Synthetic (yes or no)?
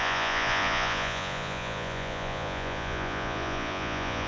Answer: yes